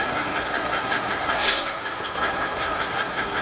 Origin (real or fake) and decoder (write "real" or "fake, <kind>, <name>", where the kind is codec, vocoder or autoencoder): fake, codec, SNAC